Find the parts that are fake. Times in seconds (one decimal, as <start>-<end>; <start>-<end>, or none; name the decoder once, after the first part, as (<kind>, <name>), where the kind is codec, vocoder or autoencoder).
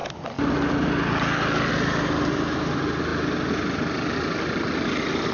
none